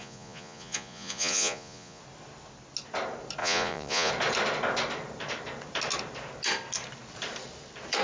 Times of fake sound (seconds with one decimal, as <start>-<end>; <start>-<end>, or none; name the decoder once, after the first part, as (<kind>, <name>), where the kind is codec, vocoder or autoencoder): 0.0-2.0 (vocoder, Vocos); 3.4-4.1